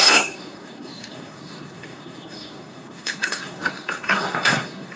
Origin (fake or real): fake